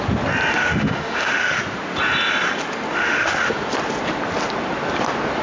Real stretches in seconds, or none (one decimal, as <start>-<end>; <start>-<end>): 0.0-0.5; 1.6-2.9; 3.5-5.4